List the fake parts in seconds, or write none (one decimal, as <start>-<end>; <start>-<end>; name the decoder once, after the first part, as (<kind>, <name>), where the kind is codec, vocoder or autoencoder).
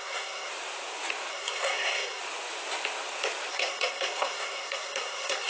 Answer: 0.0-0.5 (codec, SNAC); 1.3-2.2; 3.5-5.5